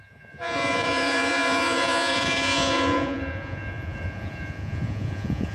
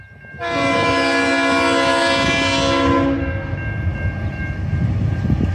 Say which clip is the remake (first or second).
first